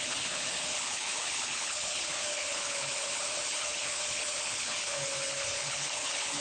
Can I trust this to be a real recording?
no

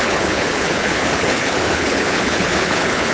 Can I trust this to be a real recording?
no